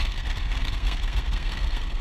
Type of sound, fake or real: fake